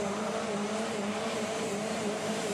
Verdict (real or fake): fake